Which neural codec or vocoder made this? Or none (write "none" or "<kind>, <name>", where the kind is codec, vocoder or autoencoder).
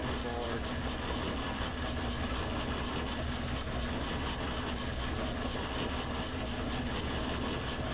none